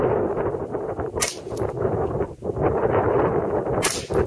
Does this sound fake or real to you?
real